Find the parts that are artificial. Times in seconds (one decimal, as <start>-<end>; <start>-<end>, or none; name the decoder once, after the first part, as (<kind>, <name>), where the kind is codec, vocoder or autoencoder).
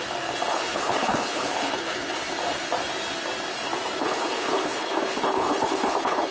0.5-2.2 (codec, HILCodec); 4.0-6.3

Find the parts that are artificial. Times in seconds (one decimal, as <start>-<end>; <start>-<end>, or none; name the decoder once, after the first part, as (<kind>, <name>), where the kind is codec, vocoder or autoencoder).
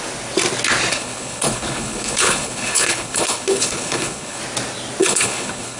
0.9-4.4 (codec, HILCodec); 5.0-5.8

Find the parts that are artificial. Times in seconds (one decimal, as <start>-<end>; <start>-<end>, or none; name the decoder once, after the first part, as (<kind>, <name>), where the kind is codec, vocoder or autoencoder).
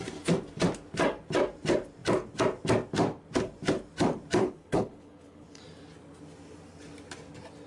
4.4-5.6 (codec, HILCodec)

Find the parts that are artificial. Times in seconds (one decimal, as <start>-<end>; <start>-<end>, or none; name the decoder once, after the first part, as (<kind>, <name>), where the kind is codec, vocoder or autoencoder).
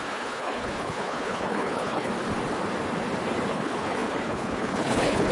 0.0-2.1 (codec, HILCodec); 3.5-5.3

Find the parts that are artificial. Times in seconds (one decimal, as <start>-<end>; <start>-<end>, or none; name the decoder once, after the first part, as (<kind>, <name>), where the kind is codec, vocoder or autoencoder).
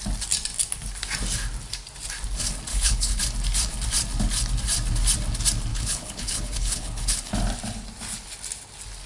2.7-3.2 (codec, HILCodec); 5.7-7.3